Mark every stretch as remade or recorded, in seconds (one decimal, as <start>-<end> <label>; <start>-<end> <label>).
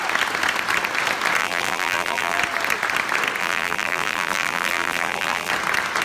0.0-1.4 recorded; 1.4-2.4 remade; 2.4-3.4 recorded; 3.4-5.5 remade; 5.5-6.0 recorded